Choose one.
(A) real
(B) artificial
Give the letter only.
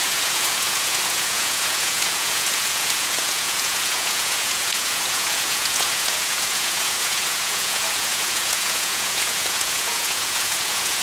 B